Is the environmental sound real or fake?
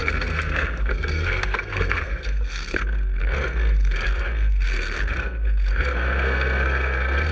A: fake